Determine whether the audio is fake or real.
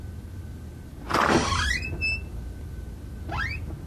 real